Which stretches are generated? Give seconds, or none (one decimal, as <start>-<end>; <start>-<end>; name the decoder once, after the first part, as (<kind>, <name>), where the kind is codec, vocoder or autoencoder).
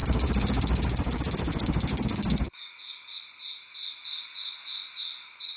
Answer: 0.0-2.7 (codec, DAC)